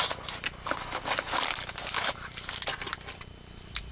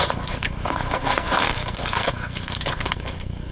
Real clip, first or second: first